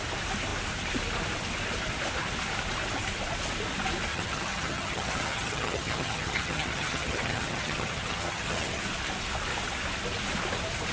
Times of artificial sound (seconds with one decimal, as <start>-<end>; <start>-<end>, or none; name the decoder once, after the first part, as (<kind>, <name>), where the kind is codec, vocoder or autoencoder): 4.1-8.8 (vocoder, HiFi-GAN)